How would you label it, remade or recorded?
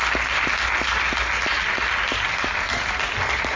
recorded